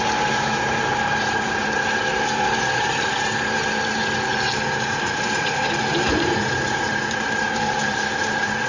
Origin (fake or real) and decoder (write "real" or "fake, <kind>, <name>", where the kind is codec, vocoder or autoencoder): fake, vocoder, BigVGAN v2